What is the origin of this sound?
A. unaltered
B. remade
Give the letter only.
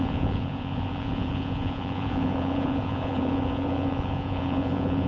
B